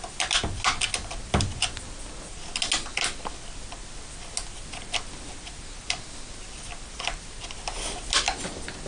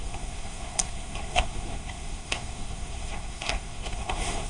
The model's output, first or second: second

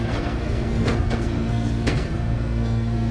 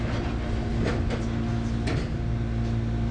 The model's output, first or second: first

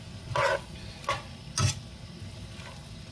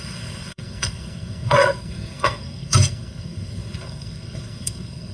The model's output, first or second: second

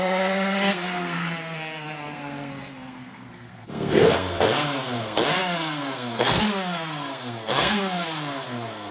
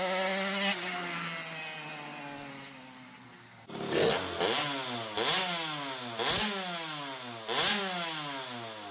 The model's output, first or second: first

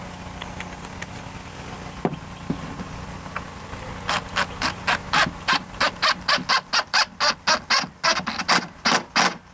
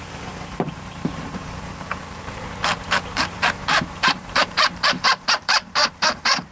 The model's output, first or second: second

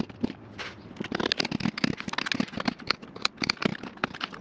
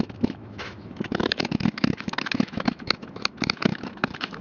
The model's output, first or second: second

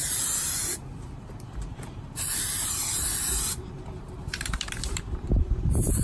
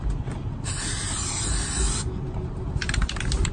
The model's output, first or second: first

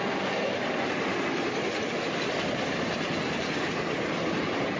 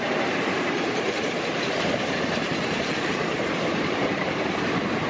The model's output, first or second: second